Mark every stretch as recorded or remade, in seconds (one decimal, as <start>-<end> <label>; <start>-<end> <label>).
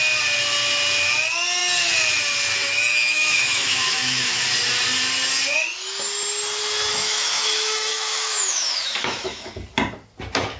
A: 0.0-2.9 recorded; 2.9-4.4 remade; 4.4-6.9 recorded; 6.9-9.5 remade; 9.5-10.6 recorded